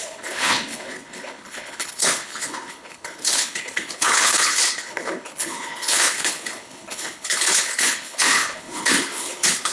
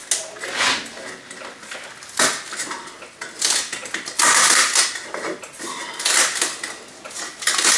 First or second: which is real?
second